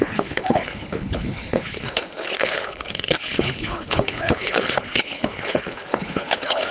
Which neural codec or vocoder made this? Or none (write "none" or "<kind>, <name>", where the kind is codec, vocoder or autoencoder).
codec, HILCodec